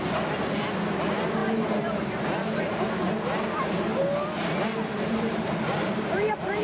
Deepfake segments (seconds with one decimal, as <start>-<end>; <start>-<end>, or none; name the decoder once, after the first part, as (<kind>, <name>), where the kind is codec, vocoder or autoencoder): 1.4-3.1 (vocoder, BigVGAN v2); 4.9-6.6